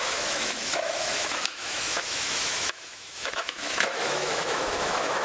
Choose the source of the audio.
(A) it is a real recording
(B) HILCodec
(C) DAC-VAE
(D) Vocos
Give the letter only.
C